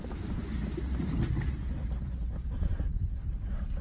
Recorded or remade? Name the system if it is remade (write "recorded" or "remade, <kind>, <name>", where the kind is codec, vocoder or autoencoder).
remade, vocoder, BigVGAN v2